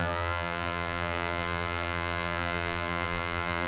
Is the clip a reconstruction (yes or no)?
yes